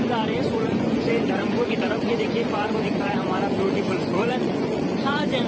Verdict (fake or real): fake